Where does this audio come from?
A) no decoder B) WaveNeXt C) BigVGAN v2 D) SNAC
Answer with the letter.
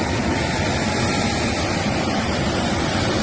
A